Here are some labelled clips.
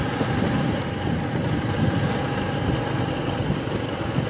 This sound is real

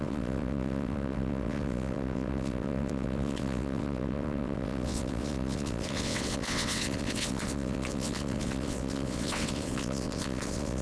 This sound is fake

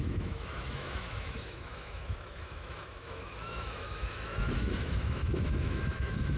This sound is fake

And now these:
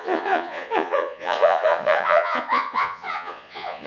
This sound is fake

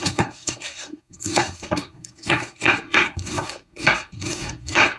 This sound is fake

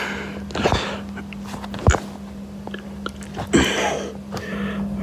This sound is real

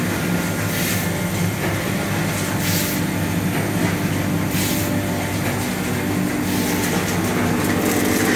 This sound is real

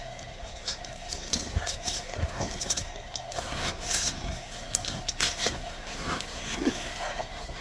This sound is fake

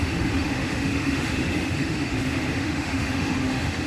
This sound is fake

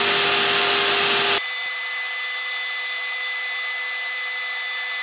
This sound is real